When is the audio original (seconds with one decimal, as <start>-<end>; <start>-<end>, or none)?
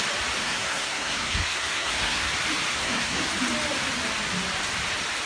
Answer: 0.0-0.4; 2.3-2.7; 3.3-5.3